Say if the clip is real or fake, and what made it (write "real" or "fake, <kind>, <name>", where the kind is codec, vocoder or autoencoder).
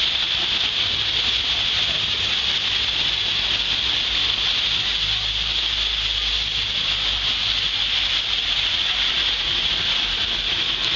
real